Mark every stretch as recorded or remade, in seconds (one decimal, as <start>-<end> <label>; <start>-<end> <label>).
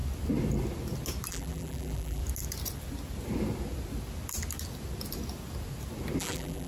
0.0-1.3 recorded; 1.3-2.2 remade; 2.2-6.2 recorded; 6.2-6.7 remade